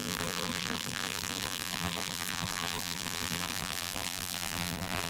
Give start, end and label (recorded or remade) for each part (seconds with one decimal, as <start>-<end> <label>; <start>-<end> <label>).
0.0-5.1 remade